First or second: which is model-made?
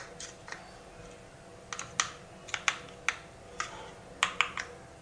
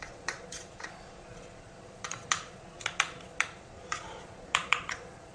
second